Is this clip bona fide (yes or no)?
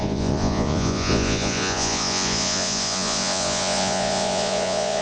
no